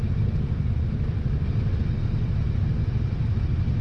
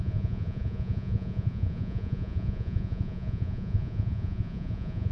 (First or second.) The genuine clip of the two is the first